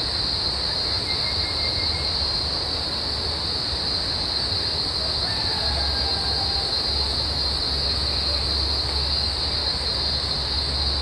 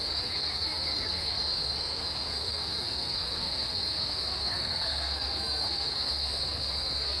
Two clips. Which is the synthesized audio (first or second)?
second